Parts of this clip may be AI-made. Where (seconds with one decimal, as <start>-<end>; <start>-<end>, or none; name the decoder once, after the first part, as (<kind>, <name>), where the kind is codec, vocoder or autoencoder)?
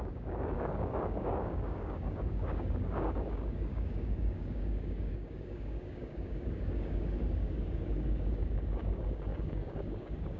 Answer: 0.0-10.4 (codec, DAC)